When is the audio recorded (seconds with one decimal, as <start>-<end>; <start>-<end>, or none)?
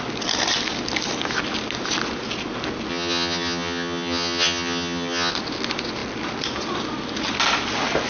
0.0-2.9; 5.3-8.1